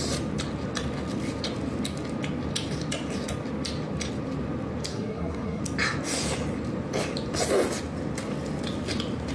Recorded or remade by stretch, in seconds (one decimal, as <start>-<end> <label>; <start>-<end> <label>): 0.0-4.9 recorded; 4.9-5.6 remade; 5.6-9.3 recorded

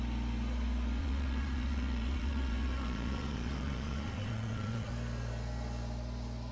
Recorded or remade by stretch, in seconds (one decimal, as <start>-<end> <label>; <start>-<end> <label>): 0.0-1.0 recorded; 1.0-4.9 remade; 4.9-6.5 recorded

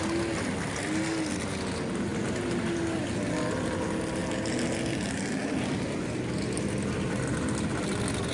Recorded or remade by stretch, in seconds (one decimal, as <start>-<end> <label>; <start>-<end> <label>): 0.0-8.3 recorded

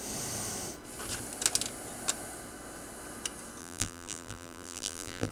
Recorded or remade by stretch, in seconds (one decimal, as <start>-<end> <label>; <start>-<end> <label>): 0.0-3.6 recorded; 3.6-5.3 remade

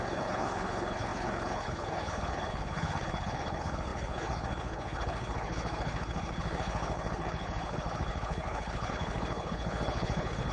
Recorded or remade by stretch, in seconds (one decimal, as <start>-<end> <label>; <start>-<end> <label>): 0.0-10.5 remade

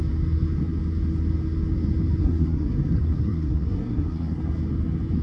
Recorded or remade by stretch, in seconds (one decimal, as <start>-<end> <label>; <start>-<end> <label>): 0.0-2.2 recorded; 2.2-4.4 remade; 4.4-5.2 recorded

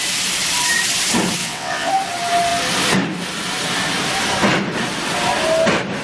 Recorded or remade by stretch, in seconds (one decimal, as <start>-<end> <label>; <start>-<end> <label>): 0.0-1.4 recorded; 1.4-1.9 remade; 1.9-6.0 recorded